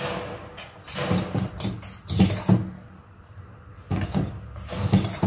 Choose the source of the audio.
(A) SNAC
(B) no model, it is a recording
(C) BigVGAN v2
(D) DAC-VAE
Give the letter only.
B